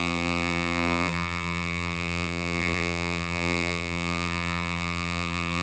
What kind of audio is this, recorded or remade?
remade